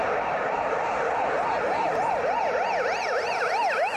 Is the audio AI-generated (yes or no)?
no